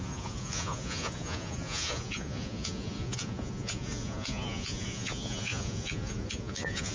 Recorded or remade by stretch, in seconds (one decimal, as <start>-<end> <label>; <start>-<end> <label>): 0.0-6.9 remade